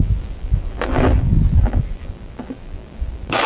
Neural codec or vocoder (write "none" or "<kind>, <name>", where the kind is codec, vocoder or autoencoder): vocoder, BigVGAN v2